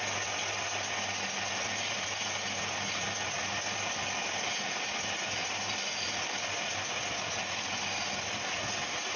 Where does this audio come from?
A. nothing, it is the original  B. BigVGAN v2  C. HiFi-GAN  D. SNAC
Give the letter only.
A